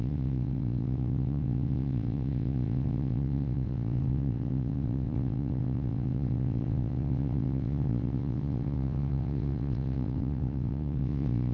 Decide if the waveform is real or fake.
fake